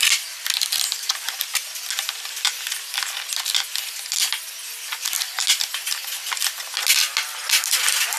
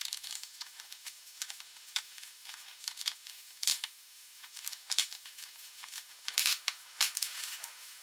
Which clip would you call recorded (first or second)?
first